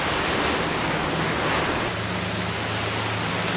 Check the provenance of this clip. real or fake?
real